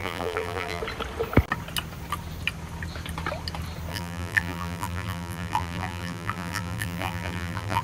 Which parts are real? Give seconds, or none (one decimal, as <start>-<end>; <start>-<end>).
0.8-3.9